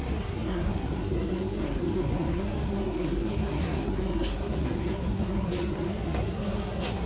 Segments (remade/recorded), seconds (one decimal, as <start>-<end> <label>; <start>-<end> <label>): 0.0-7.1 remade